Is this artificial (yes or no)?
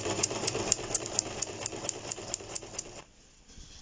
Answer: no